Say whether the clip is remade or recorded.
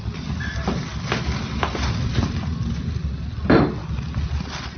recorded